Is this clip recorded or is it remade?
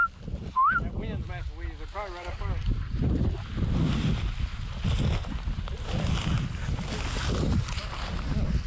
recorded